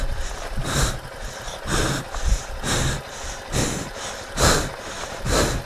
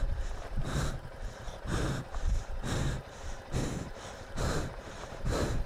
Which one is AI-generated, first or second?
second